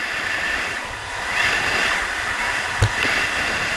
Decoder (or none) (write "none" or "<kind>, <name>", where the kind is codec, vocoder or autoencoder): none